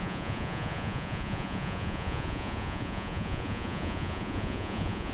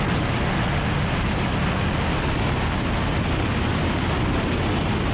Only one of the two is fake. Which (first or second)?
first